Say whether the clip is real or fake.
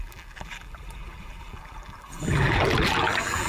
fake